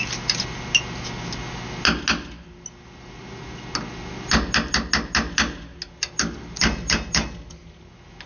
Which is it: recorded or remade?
recorded